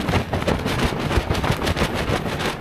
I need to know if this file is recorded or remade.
recorded